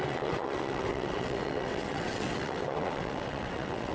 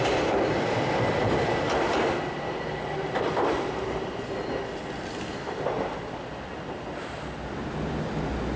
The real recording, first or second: second